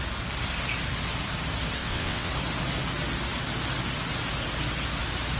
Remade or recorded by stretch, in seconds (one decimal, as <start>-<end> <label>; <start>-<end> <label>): 0.0-1.8 recorded; 1.8-2.3 remade; 2.3-5.4 recorded